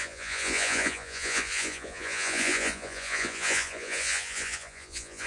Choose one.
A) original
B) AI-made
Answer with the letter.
B